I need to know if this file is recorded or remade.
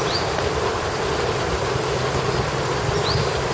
recorded